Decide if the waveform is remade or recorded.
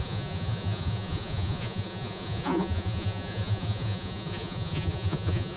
remade